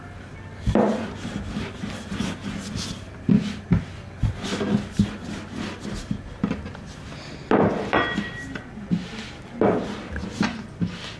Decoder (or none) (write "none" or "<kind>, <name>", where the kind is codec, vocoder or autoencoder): none